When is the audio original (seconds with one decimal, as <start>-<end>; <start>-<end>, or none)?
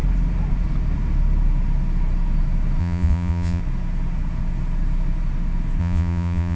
0.0-2.8; 3.6-5.8